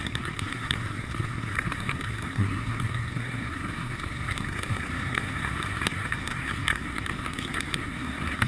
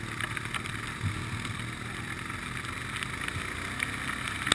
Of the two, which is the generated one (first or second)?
first